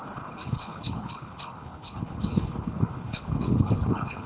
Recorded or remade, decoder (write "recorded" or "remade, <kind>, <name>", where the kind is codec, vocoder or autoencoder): remade, codec, HILCodec